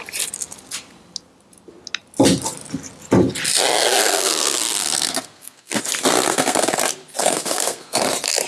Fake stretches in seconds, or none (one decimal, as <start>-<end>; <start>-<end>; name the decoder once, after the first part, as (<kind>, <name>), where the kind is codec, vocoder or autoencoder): 3.8-5.8 (codec, SNAC); 6.3-6.8; 7.2-8.0